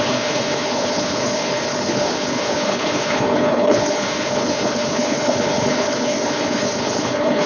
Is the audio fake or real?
fake